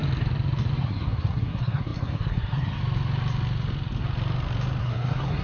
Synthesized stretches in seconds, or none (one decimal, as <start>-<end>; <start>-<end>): 0.8-2.8; 4.8-5.4